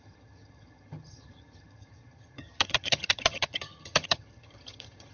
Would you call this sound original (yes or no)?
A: no